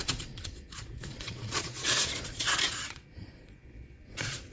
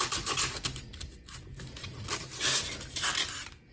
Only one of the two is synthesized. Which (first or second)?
first